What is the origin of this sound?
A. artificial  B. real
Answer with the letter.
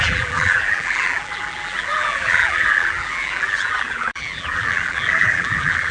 A